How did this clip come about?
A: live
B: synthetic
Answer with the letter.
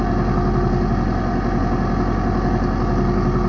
A